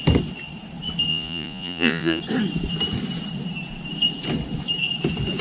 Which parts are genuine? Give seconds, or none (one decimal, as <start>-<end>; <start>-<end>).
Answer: 0.0-1.1; 2.2-5.4